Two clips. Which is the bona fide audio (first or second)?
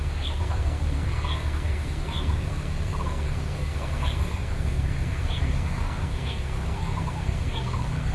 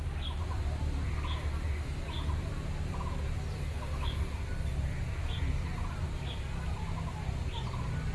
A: second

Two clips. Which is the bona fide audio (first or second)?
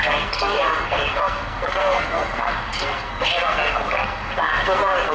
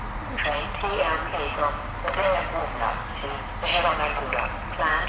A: second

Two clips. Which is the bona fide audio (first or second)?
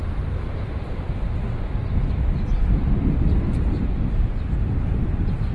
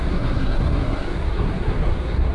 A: first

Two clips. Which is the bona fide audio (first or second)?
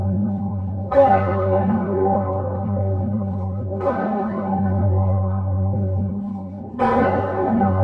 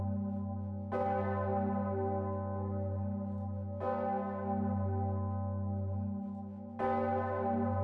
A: second